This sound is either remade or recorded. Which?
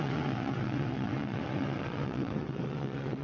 remade